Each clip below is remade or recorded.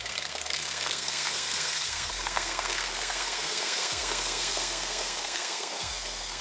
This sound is remade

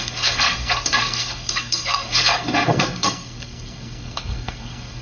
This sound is remade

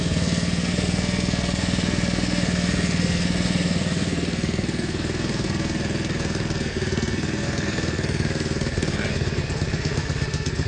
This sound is remade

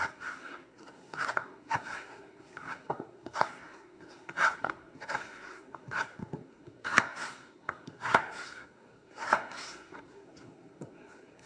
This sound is remade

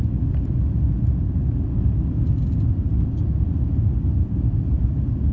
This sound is recorded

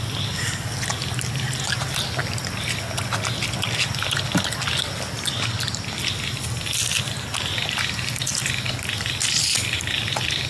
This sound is recorded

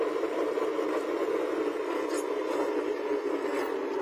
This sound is recorded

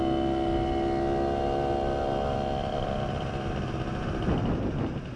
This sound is recorded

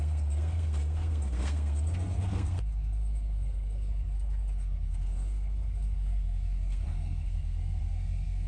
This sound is remade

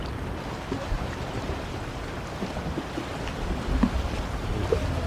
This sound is recorded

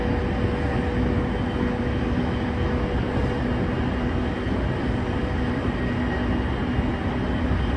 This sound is recorded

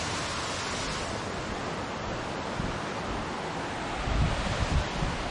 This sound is recorded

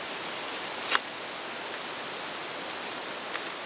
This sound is recorded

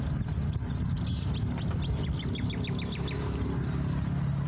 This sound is recorded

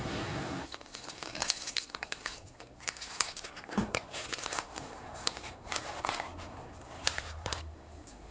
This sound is remade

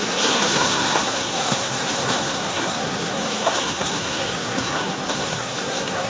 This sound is remade